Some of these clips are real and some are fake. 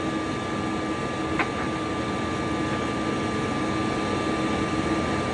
real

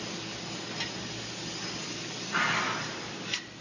real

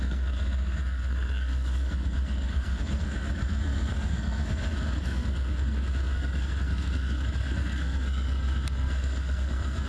fake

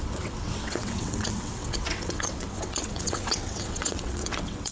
fake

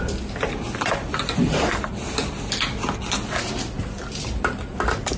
real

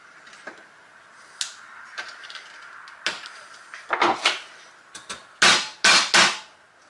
real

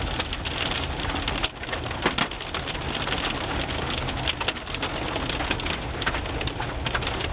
real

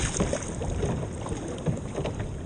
real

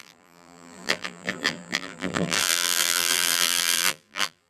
fake